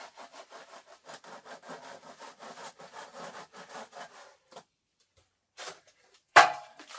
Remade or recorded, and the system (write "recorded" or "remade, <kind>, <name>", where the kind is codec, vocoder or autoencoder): remade, vocoder, BigVGAN v2